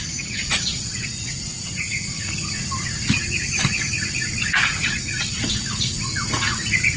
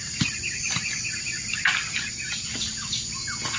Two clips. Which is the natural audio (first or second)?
second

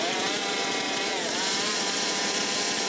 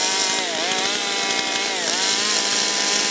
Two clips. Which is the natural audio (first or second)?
second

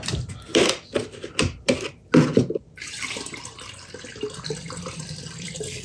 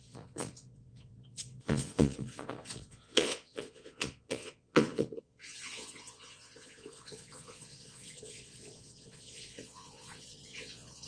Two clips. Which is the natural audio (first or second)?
first